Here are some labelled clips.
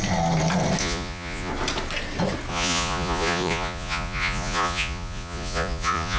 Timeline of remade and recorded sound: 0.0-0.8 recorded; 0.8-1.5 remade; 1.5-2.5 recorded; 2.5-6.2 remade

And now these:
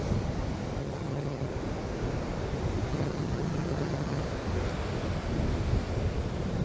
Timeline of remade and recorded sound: 0.0-0.8 recorded; 0.8-1.5 remade; 1.5-2.9 recorded; 2.9-4.2 remade; 4.2-6.6 recorded

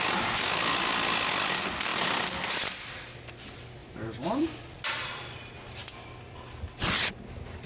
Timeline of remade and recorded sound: 0.0-3.8 recorded; 3.8-5.0 remade; 5.0-7.7 recorded